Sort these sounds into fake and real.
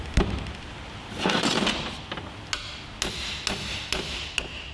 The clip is real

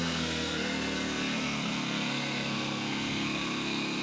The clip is fake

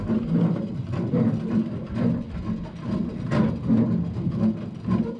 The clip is real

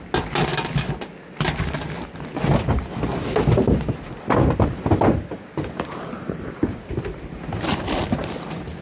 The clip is real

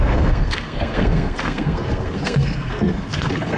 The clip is fake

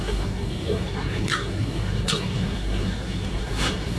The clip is fake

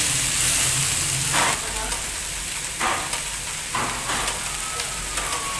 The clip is real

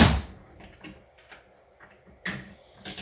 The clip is real